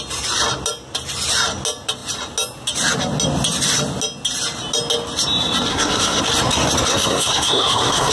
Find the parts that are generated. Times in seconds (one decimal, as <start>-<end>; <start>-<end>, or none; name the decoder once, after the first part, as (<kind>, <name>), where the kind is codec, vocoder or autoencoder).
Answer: 5.7-6.2 (codec, SNAC); 6.9-8.1